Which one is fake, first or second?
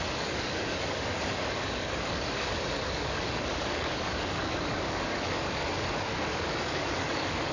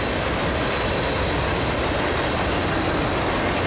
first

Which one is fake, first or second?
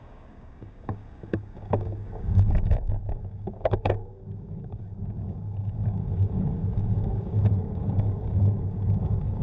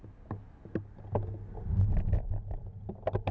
first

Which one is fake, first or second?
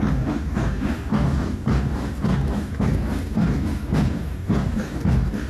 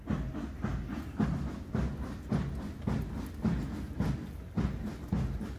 first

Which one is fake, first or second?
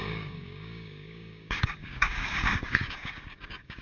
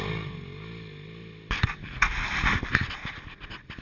first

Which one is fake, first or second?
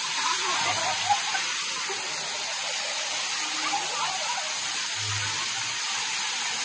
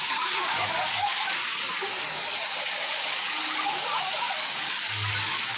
second